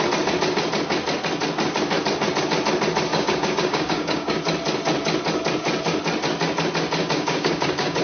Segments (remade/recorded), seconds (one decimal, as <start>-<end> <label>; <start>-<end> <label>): 0.0-3.1 recorded; 3.1-4.4 remade; 4.4-7.0 recorded; 7.0-8.0 remade